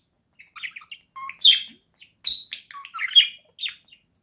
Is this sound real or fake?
real